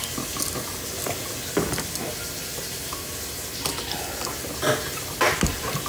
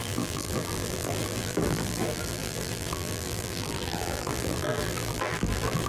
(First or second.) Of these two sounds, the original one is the first